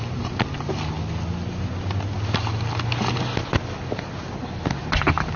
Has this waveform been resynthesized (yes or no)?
no